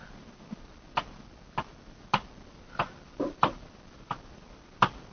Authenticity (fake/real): real